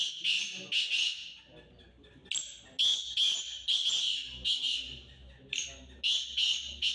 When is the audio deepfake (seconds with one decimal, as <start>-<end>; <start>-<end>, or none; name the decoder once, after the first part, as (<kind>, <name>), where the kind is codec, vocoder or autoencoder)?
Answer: none